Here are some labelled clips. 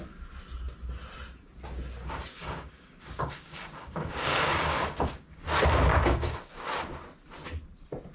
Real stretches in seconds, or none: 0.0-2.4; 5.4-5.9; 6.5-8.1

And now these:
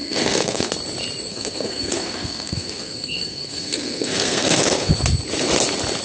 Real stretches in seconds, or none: 0.7-1.3; 4.9-6.0

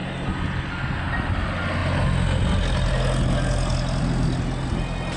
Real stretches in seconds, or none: 0.0-5.2

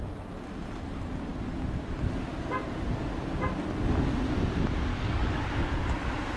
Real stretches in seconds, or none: 0.0-4.9; 5.5-6.4